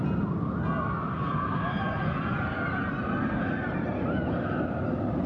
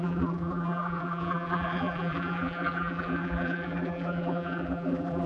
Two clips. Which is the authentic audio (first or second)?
first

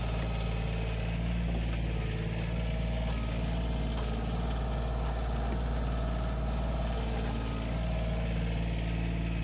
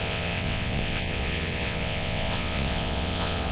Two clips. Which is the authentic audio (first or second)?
first